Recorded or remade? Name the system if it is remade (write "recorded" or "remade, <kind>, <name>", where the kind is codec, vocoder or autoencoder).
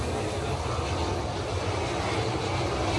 recorded